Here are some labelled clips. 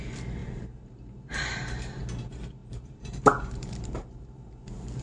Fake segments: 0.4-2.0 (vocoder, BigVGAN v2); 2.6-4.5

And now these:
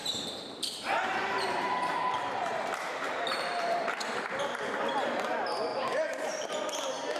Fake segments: 0.0-4.3 (vocoder, BigVGAN v2); 5.7-6.5

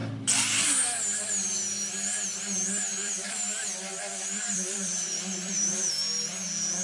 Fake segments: 2.9-3.4 (vocoder, BigVGAN v2); 3.9-5.9

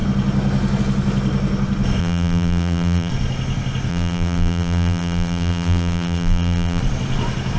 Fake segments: 2.0-3.1 (vocoder, BigVGAN v2); 3.9-6.8